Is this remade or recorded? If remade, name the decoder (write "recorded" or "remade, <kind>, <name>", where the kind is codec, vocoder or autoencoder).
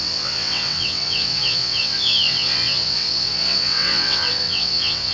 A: remade, vocoder, WaveNeXt